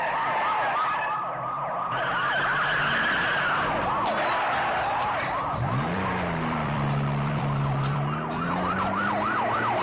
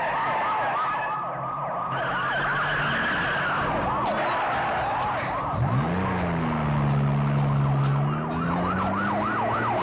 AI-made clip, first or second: first